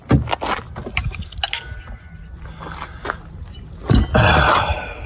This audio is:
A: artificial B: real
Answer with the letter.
B